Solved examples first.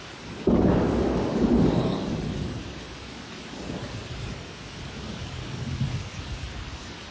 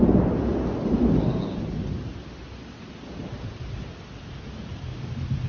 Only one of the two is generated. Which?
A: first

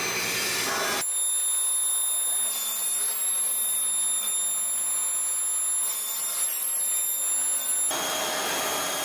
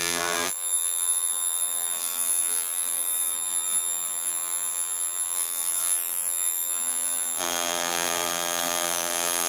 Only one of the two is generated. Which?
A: second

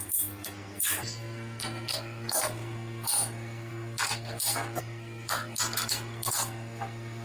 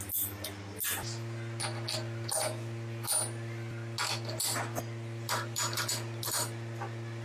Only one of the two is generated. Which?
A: first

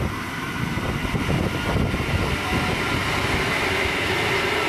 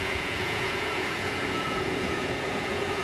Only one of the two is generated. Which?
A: second